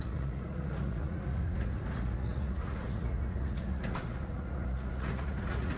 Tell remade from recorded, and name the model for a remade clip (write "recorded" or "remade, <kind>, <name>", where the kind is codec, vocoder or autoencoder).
remade, vocoder, Vocos